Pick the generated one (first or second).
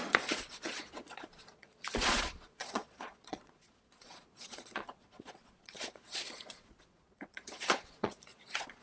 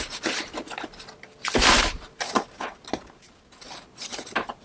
first